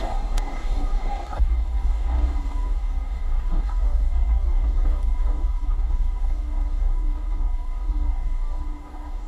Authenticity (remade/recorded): remade